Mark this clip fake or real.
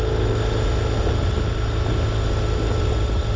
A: real